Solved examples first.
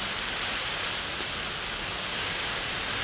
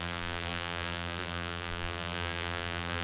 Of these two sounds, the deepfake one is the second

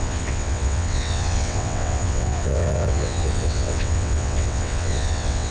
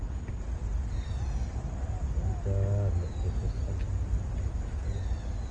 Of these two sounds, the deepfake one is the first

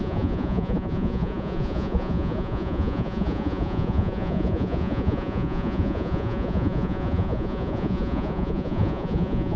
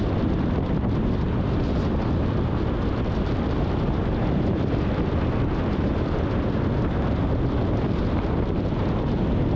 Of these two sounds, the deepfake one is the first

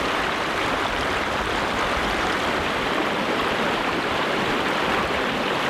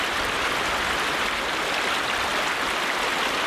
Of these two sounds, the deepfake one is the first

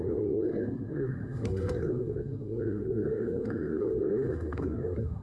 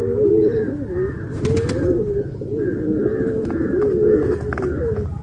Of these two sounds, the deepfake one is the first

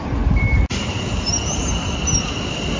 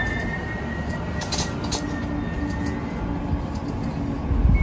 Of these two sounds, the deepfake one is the first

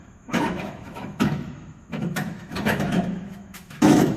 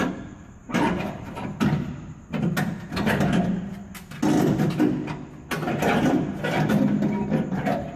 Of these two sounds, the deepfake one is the first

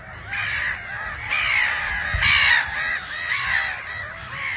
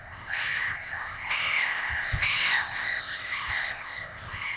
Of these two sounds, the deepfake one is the second